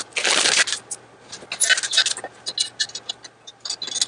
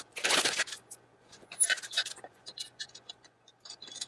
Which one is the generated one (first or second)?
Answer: second